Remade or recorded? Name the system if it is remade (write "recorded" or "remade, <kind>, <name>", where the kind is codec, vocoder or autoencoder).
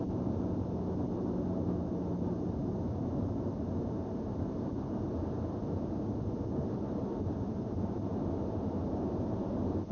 recorded